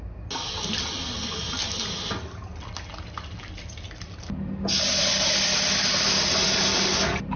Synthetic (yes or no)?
no